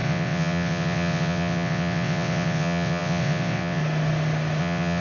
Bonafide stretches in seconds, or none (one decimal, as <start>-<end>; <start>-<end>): 3.8-4.6